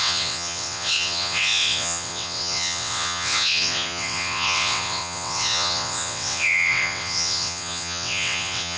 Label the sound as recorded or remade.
remade